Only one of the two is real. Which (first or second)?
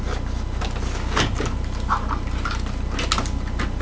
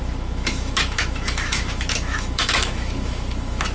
first